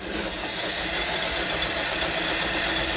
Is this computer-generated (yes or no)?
no